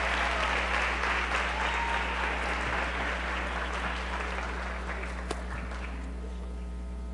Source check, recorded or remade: recorded